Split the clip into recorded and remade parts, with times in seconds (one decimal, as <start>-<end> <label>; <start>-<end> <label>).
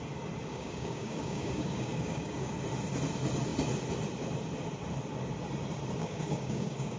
0.0-0.5 recorded; 0.5-2.5 remade; 2.5-6.0 recorded; 6.0-7.0 remade